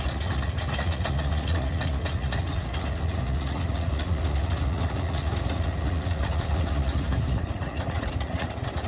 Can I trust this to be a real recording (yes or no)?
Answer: no